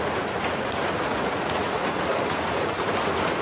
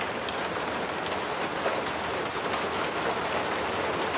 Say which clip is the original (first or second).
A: second